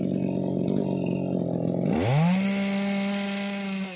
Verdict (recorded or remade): recorded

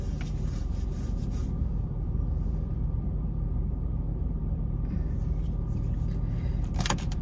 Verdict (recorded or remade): remade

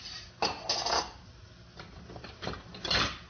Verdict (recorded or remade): recorded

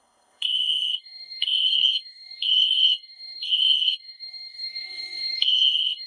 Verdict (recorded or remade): remade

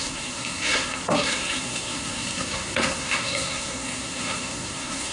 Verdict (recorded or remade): remade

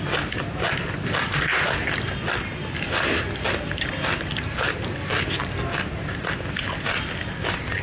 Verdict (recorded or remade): recorded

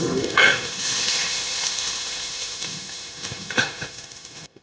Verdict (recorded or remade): remade